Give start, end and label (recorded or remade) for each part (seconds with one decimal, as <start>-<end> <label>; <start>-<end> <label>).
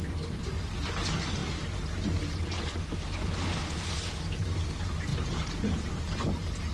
0.0-6.7 recorded